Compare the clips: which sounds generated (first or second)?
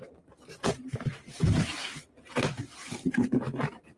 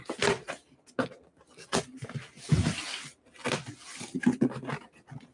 first